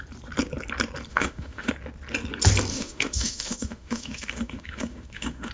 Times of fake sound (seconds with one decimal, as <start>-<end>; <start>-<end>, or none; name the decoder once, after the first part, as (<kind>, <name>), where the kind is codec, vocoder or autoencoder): 1.1-1.7 (autoencoder, DAC-VAE); 2.7-5.5